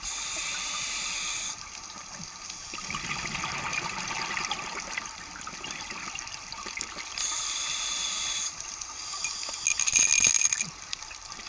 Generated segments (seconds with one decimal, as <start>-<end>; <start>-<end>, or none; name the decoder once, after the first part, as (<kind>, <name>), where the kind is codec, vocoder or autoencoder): none